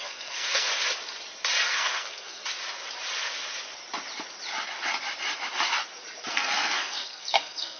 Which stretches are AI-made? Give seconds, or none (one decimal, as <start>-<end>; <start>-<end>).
0.0-0.7; 1.7-2.4; 6.3-7.8